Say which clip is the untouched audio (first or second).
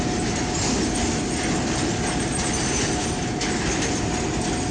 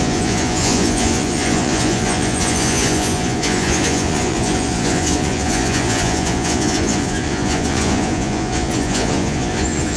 first